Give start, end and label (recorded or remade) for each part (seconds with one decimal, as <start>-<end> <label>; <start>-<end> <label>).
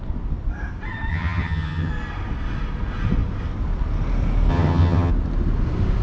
0.0-1.1 recorded; 1.1-1.9 remade; 1.9-4.5 recorded; 4.5-5.1 remade; 5.1-6.0 recorded